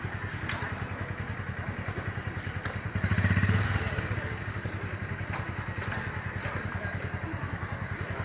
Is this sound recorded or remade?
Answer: recorded